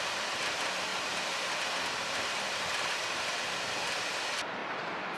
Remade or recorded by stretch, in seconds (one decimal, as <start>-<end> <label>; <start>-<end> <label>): 0.0-5.2 recorded

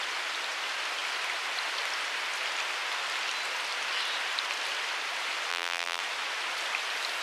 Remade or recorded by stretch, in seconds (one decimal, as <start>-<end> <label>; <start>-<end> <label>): 0.0-5.5 recorded; 5.5-6.0 remade; 6.0-7.2 recorded

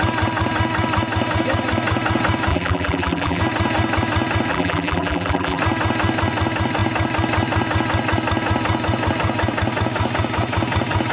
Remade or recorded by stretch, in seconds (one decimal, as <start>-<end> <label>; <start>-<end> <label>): 0.0-2.5 recorded; 2.5-3.4 remade; 3.4-4.5 recorded; 4.5-5.6 remade; 5.6-11.1 recorded